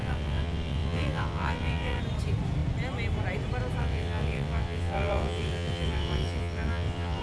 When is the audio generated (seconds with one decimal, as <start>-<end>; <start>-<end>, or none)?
0.0-2.0; 3.8-7.2